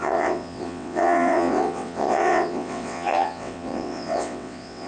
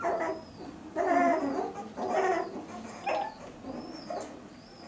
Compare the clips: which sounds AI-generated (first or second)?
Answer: first